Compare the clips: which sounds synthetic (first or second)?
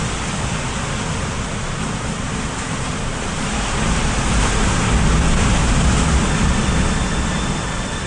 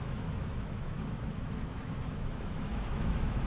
second